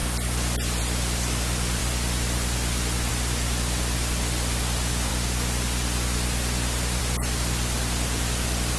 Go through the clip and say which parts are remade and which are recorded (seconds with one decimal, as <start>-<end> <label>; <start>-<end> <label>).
0.0-8.8 recorded